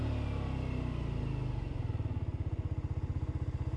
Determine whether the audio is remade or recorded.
recorded